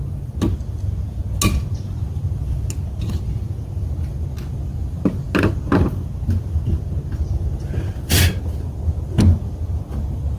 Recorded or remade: recorded